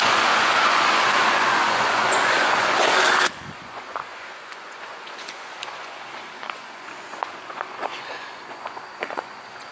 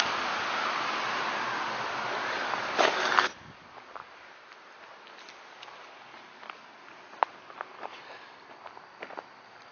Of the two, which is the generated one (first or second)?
first